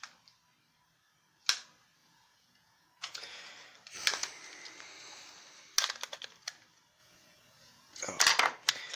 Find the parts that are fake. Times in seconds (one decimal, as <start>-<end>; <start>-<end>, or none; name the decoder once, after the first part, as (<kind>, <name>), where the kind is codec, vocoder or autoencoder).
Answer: 2.0-3.5 (vocoder, Vocos); 7.0-8.2